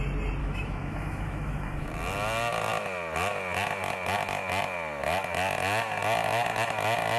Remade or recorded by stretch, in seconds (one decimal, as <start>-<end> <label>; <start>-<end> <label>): 0.0-0.4 recorded; 0.4-1.9 remade; 1.9-7.2 recorded